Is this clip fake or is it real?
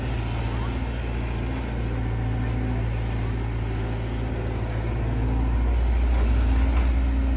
real